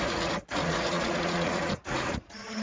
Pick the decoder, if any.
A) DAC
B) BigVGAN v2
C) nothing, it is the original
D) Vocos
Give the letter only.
D